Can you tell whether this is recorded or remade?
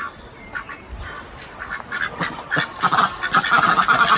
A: recorded